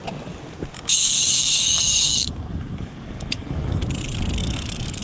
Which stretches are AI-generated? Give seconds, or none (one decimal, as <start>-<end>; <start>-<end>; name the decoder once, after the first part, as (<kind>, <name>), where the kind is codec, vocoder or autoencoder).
0.9-3.9 (codec, DAC); 4.4-5.0